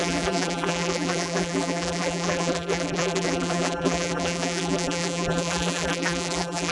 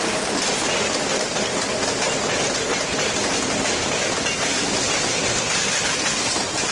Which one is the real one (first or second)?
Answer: second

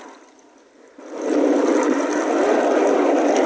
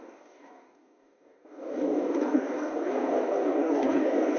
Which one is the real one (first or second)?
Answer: first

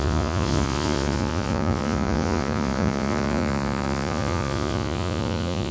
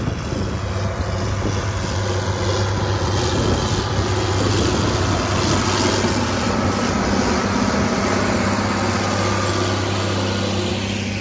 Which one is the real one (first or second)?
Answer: second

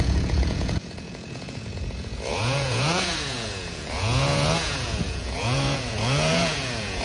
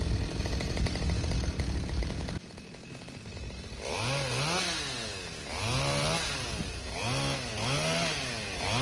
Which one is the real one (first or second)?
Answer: second